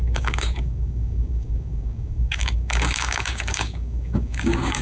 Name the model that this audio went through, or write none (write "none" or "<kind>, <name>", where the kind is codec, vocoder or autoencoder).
codec, DAC